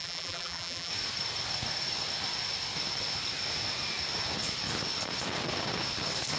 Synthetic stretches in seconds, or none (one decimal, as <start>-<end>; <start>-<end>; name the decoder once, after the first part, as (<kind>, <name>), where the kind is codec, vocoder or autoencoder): 0.0-0.9 (vocoder, BigVGAN v2)